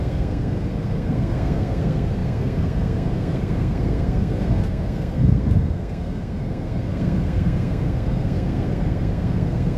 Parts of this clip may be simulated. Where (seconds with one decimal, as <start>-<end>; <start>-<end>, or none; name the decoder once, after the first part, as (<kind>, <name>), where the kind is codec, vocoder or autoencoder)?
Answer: 0.0-9.8 (codec, SNAC)